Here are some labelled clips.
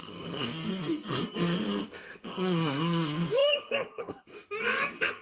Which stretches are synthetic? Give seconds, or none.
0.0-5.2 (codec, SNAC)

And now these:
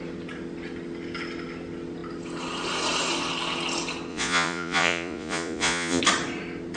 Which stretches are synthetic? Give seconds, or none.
4.1-6.0 (vocoder, Vocos)

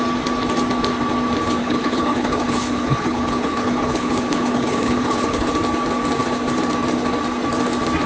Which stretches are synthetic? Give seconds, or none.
1.6-5.5 (codec, HILCodec)

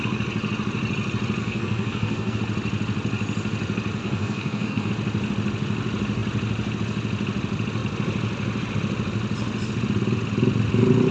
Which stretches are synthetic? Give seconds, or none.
1.4-2.4 (codec, SNAC); 4.0-4.9

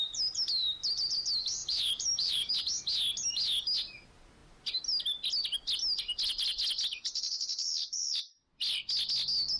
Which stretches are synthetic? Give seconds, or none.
1.6-2.5 (vocoder, BigVGAN v2)

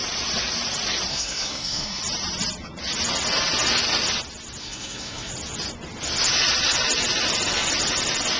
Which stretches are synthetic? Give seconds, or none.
1.1-2.0 (codec, SNAC); 4.6-5.3